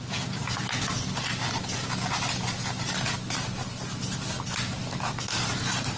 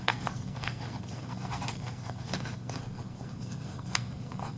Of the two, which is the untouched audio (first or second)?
first